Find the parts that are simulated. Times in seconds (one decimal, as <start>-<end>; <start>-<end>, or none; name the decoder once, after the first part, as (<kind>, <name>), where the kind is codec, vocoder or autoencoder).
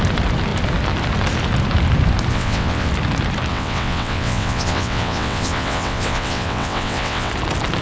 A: 2.3-2.9 (vocoder, WaveNeXt); 3.5-7.3